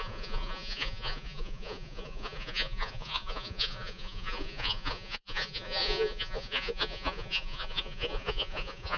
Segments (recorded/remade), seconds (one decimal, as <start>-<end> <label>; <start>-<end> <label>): 0.0-9.0 remade